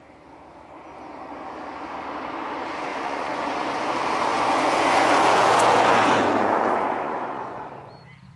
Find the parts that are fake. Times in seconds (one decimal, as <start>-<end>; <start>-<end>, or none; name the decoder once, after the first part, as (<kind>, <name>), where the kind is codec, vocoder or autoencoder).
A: 2.9-3.9 (vocoder, Vocos); 4.3-7.9